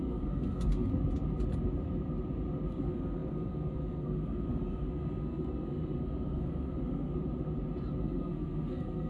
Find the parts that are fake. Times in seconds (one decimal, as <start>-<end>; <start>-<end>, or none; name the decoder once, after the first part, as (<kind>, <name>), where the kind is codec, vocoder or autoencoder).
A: 0.0-0.9 (codec, SNAC); 2.8-7.2; 8.0-9.1